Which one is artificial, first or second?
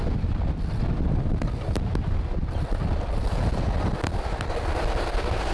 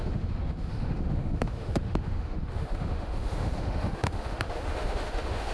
second